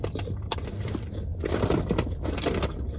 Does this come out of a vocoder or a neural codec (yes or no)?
yes